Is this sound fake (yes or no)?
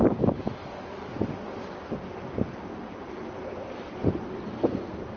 no